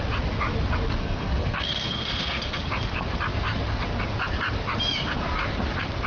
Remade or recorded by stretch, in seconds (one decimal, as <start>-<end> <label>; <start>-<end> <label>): 0.0-1.0 recorded; 1.0-2.6 remade; 2.6-6.1 recorded